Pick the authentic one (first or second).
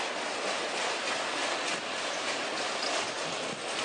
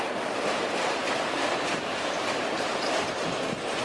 first